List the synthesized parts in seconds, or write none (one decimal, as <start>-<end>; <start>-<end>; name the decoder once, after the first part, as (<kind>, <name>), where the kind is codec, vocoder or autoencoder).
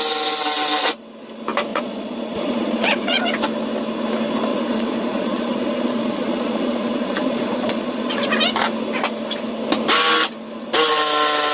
1.7-3.2 (vocoder, Vocos); 4.5-8.3